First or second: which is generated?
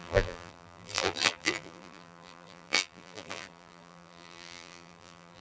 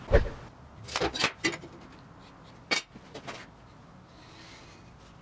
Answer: first